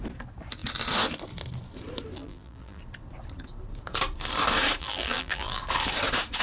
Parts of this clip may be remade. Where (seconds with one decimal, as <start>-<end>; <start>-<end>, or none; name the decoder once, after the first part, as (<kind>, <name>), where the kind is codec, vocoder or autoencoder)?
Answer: 2.2-2.8 (vocoder, BigVGAN v2); 4.8-5.6